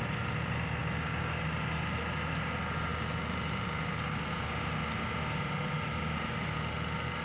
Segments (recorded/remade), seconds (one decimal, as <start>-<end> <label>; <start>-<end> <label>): 0.0-7.2 recorded